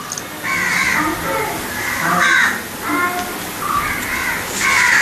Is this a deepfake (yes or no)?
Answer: no